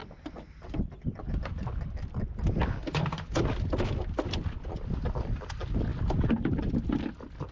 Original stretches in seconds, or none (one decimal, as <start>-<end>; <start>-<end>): 0.0-7.5